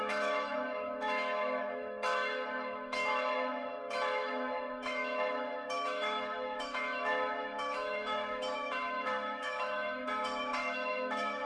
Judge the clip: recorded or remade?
remade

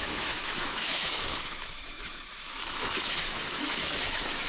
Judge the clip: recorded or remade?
remade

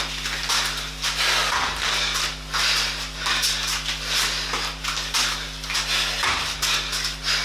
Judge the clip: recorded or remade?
recorded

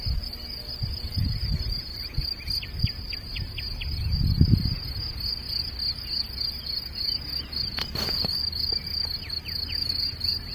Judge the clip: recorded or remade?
recorded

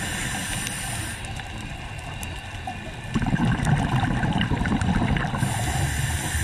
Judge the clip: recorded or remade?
recorded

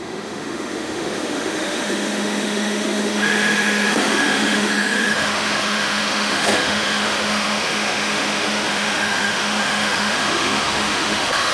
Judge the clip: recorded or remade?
remade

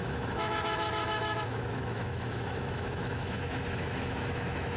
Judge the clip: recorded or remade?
remade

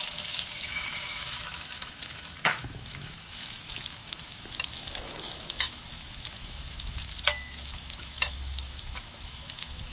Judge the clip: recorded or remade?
remade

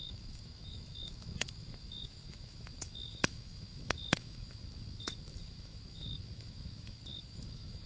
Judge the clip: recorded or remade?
remade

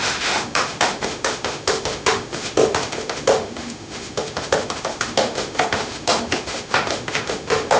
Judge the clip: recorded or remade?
remade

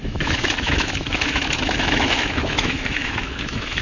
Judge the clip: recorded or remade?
remade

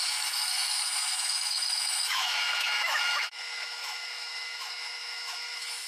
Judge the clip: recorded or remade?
remade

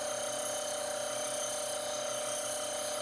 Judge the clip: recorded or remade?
recorded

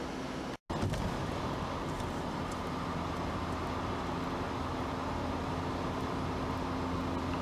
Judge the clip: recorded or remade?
recorded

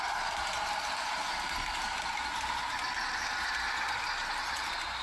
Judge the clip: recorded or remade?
recorded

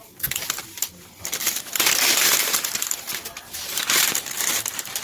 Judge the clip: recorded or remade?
recorded